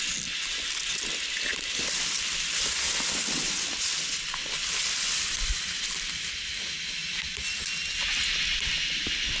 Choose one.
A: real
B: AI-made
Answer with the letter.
A